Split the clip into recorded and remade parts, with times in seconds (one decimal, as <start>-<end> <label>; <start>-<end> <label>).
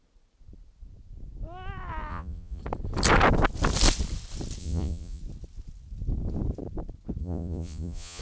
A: 0.0-2.1 recorded; 2.1-2.6 remade; 2.6-4.6 recorded; 4.6-5.2 remade; 5.2-7.2 recorded; 7.2-8.2 remade